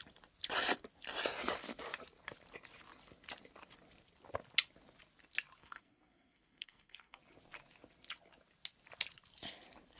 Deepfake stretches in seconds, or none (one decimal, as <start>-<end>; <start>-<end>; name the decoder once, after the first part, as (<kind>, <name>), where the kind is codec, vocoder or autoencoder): 5.6-7.2 (codec, SNAC)